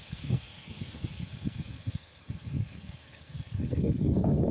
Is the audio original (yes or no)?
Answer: no